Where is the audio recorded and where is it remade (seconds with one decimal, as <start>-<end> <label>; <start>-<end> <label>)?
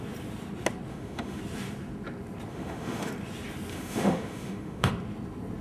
0.0-0.9 recorded; 0.9-1.4 remade; 1.4-2.5 recorded; 2.5-3.1 remade; 3.1-3.7 recorded; 3.7-4.9 remade; 4.9-5.6 recorded